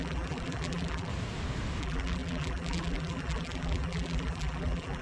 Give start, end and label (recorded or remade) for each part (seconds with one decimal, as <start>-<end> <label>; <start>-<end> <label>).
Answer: 0.0-1.1 remade; 1.1-1.8 recorded; 1.8-5.0 remade